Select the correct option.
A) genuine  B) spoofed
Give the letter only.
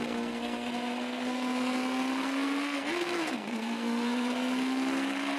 B